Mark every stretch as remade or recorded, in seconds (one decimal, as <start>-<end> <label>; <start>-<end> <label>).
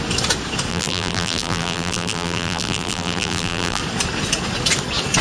0.0-0.7 recorded; 0.7-3.8 remade; 3.8-5.2 recorded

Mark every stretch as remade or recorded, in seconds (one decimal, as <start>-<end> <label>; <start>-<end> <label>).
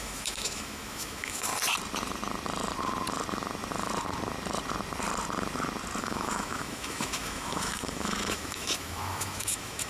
0.0-1.5 remade; 1.5-6.0 recorded; 6.0-9.9 remade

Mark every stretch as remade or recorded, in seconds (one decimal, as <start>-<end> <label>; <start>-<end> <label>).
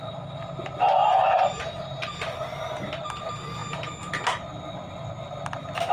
0.0-1.0 recorded; 1.0-2.1 remade; 2.1-5.9 recorded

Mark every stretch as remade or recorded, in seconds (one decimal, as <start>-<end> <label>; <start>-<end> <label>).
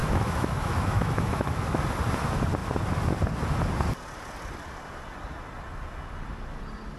0.0-1.8 remade; 1.8-7.0 recorded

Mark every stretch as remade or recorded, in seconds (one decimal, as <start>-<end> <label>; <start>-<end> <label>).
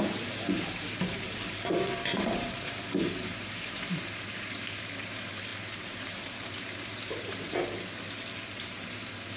0.0-7.6 remade; 7.6-8.8 recorded; 8.8-9.4 remade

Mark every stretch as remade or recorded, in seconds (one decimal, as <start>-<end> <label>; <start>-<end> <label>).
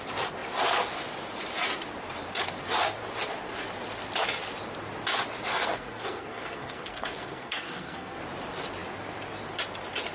0.0-5.5 recorded; 5.5-8.2 remade; 8.2-10.1 recorded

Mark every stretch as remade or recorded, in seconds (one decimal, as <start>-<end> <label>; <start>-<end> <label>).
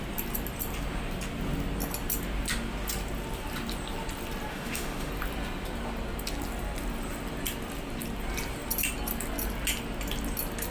0.0-4.5 recorded; 4.5-5.1 remade; 5.1-10.7 recorded